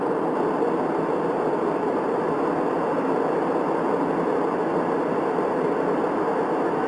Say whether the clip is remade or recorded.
recorded